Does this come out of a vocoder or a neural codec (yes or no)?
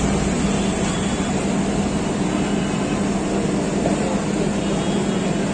no